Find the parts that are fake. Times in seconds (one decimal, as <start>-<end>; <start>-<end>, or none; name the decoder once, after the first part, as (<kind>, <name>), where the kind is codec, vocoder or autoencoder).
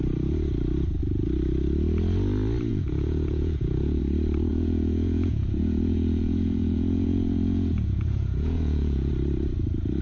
2.7-4.0 (vocoder, Vocos); 4.5-9.1